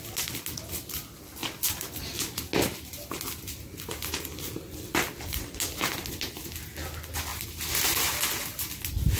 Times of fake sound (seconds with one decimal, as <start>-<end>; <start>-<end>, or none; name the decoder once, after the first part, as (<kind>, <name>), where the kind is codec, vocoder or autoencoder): none